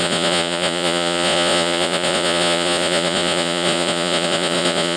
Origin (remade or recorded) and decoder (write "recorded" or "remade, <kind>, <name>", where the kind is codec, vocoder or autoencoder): remade, vocoder, Vocos